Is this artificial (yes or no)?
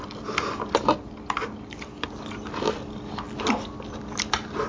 no